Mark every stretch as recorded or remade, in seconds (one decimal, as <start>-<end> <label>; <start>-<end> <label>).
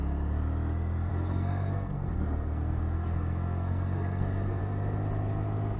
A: 0.0-1.1 recorded; 1.1-4.6 remade; 4.6-5.8 recorded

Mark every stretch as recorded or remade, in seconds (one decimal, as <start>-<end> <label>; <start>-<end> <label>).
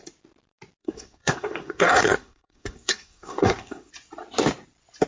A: 0.0-0.8 recorded; 0.8-3.9 remade; 3.9-5.1 recorded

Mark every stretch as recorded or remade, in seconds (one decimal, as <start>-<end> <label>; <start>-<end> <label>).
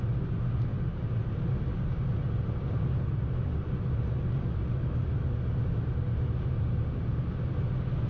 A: 0.0-8.1 recorded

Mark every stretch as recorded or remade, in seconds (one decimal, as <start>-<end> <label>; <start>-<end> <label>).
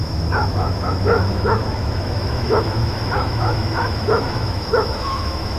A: 0.0-5.6 remade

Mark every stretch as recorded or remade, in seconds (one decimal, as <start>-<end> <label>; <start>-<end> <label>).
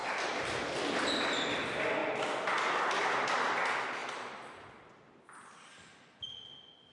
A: 0.0-6.9 recorded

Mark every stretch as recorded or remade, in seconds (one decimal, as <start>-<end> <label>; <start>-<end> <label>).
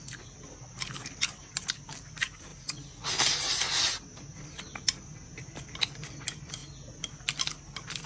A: 0.0-8.1 recorded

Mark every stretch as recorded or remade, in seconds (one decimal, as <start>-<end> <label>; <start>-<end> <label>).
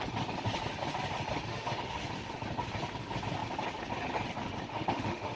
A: 0.0-1.5 recorded; 1.5-2.1 remade; 2.1-4.7 recorded; 4.7-5.4 remade